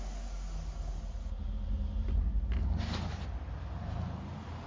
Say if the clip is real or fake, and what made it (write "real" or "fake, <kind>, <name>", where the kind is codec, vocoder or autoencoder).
real